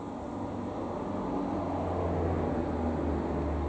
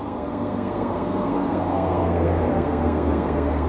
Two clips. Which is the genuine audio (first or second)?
first